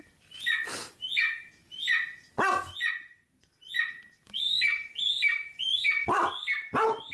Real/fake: real